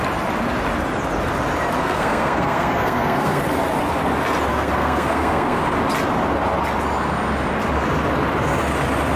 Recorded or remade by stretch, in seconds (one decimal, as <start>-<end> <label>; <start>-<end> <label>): 0.0-1.8 recorded; 1.8-3.4 remade; 3.4-4.5 recorded; 4.5-5.6 remade; 5.6-9.2 recorded